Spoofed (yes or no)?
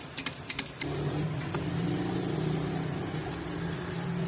no